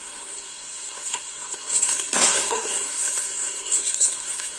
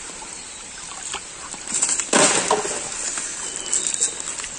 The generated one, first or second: first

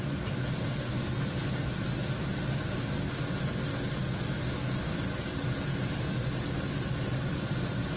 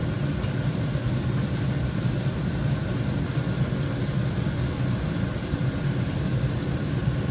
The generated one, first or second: second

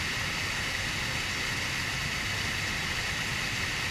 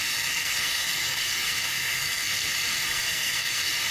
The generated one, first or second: second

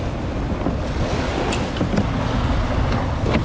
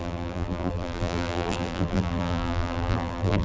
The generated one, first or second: second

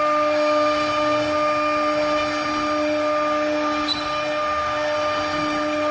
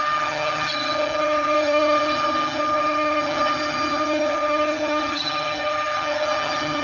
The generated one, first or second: second